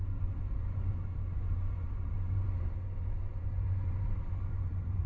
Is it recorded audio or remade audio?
remade